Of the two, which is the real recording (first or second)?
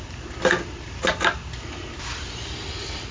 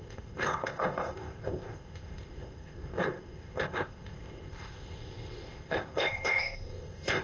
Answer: first